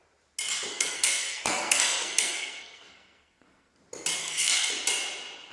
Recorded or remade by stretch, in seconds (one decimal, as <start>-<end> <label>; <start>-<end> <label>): 0.0-0.7 recorded; 0.7-3.7 remade; 3.7-4.2 recorded; 4.2-4.7 remade; 4.7-5.5 recorded